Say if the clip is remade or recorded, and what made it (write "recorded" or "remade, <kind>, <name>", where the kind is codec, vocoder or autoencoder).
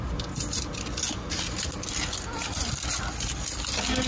recorded